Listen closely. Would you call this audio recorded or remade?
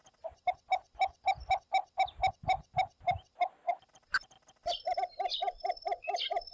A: recorded